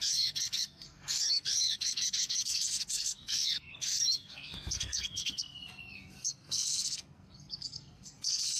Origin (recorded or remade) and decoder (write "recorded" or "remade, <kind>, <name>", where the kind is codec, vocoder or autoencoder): remade, codec, SNAC